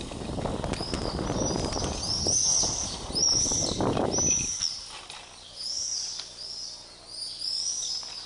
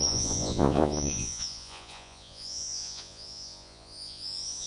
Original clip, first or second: first